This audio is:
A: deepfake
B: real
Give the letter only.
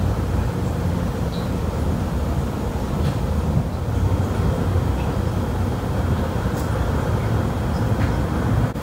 B